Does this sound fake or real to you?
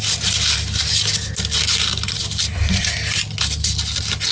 real